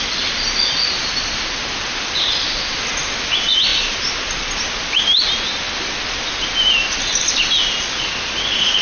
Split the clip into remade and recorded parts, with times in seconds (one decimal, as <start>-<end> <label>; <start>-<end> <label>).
0.0-8.8 recorded